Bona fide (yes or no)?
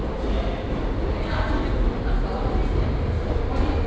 yes